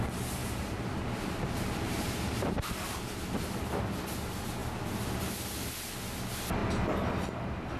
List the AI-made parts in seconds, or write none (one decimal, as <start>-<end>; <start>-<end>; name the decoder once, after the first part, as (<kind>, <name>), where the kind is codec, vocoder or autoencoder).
0.4-3.1 (vocoder, BigVGAN v2)